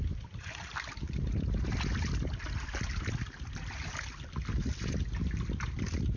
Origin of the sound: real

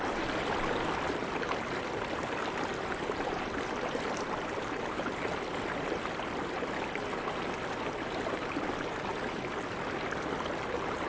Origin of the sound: real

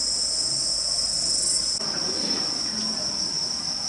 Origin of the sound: real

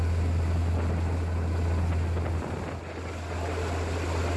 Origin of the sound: real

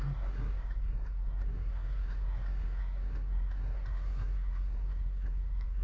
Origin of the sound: fake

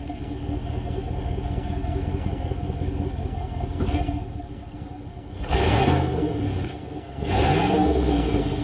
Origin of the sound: fake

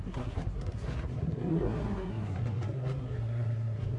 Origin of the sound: fake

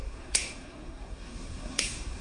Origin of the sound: fake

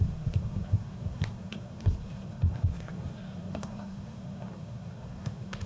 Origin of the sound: fake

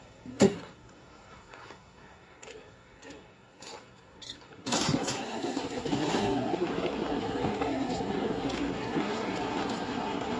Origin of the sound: fake